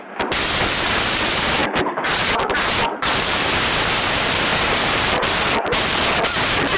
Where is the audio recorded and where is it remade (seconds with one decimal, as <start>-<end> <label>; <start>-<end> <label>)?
0.0-1.6 recorded; 1.6-3.4 remade; 3.4-4.5 recorded; 4.5-5.3 remade; 5.3-6.8 recorded